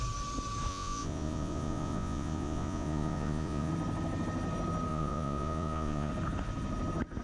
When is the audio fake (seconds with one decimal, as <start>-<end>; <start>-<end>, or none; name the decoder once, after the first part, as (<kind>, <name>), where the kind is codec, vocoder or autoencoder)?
0.7-3.7 (vocoder, Vocos); 4.9-6.1